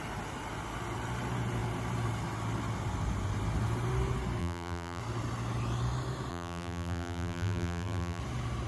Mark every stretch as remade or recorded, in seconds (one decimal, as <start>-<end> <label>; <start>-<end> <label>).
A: 0.0-4.4 recorded; 4.4-5.0 remade; 5.0-6.3 recorded; 6.3-8.2 remade; 8.2-8.7 recorded